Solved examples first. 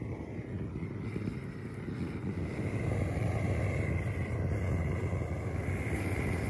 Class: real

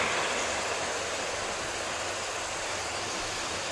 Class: real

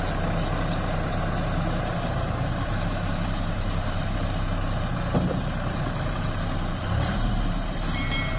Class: fake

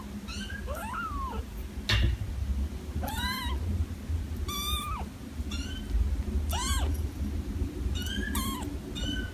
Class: real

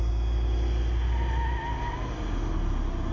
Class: real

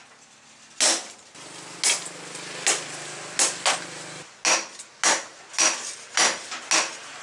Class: real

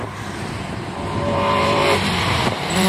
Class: fake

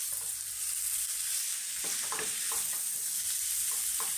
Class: fake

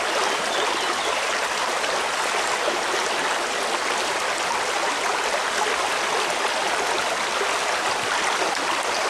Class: real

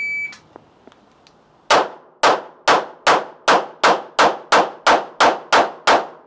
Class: real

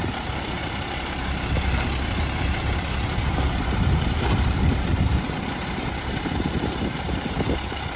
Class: fake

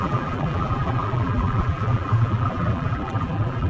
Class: fake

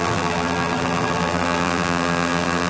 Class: fake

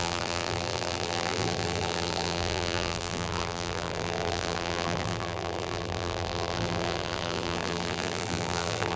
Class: fake